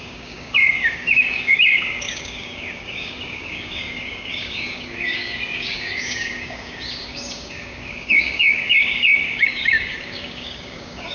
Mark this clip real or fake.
fake